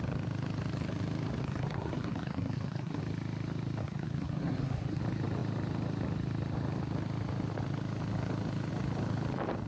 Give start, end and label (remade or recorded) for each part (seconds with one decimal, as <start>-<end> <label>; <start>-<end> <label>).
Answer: 0.0-1.4 recorded; 1.4-3.0 remade; 3.0-3.8 recorded; 3.8-5.0 remade; 5.0-9.7 recorded